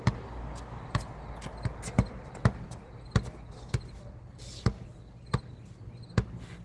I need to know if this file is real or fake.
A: real